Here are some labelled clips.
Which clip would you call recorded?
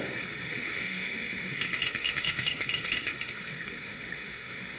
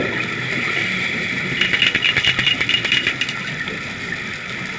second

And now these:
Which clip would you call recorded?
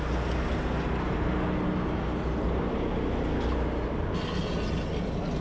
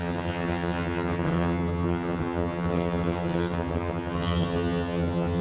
first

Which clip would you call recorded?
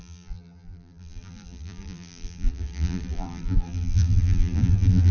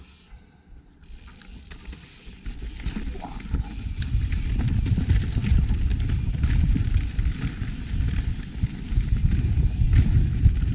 second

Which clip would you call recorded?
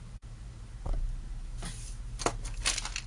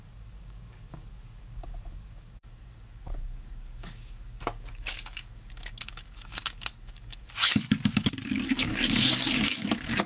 first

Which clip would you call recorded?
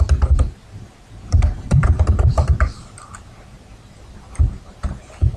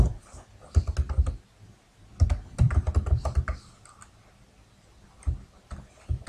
second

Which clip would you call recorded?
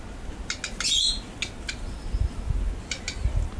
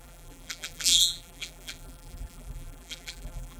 first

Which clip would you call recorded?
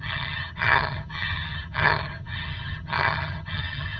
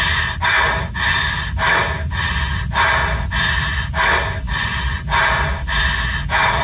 second